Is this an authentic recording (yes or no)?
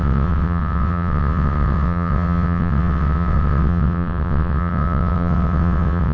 no